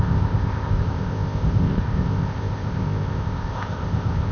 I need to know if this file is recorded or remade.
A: remade